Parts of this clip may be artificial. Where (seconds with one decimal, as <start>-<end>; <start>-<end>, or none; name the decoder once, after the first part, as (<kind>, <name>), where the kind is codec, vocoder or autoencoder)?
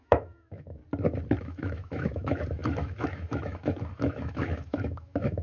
0.0-0.8 (autoencoder, DAC-VAE); 1.4-5.4